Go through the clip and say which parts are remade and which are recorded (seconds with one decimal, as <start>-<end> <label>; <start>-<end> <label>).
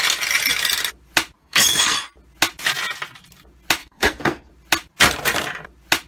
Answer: 0.0-1.4 recorded; 1.4-2.0 remade; 2.0-3.8 recorded; 3.8-4.5 remade; 4.5-6.1 recorded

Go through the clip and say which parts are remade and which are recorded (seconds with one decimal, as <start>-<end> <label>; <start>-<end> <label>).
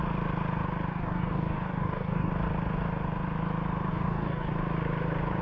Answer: 0.0-0.9 recorded; 0.9-2.3 remade; 2.3-3.9 recorded; 3.9-4.5 remade; 4.5-5.4 recorded